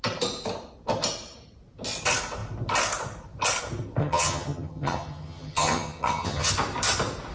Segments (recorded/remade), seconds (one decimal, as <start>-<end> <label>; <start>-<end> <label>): 0.0-4.0 recorded; 4.0-6.5 remade; 6.5-7.3 recorded